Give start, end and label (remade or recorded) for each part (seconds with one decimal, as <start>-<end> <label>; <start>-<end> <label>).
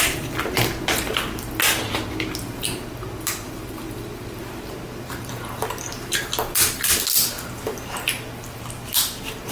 0.0-9.5 recorded